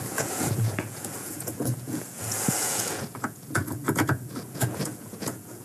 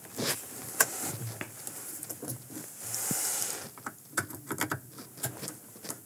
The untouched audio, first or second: second